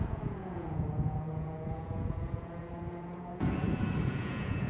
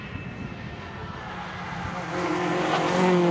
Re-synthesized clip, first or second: first